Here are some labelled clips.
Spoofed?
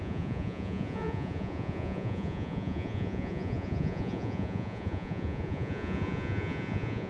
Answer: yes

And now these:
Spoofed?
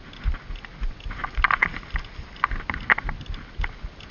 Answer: no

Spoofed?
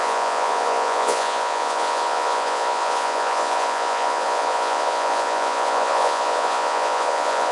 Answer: yes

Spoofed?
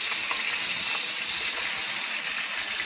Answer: no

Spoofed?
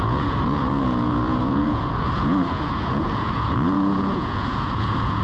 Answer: yes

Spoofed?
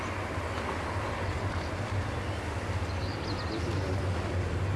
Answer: no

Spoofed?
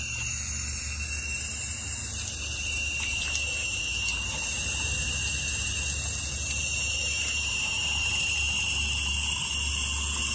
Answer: no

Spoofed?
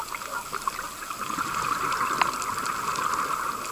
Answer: no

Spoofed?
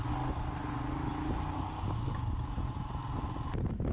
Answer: no